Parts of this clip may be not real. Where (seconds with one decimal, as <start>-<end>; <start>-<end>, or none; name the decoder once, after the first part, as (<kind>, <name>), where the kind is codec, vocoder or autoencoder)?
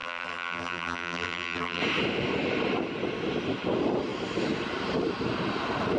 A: 0.0-1.8 (vocoder, BigVGAN v2)